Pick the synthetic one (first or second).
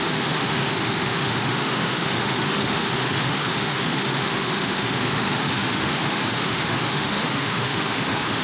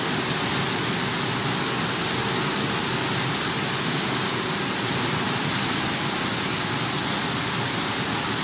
first